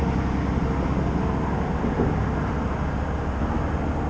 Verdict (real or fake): real